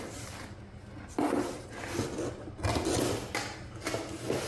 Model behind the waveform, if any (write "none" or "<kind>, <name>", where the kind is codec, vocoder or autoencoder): none